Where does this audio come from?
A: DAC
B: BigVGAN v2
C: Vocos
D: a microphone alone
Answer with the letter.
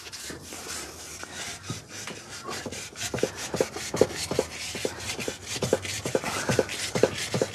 D